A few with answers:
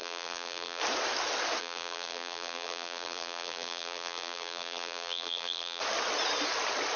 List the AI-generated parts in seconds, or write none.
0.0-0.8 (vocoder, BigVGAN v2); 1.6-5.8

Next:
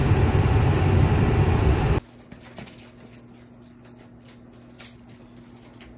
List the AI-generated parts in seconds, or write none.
none

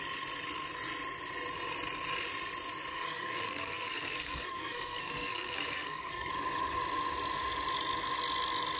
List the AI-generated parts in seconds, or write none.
2.9-6.3 (codec, SNAC)